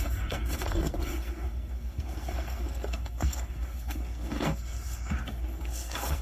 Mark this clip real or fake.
fake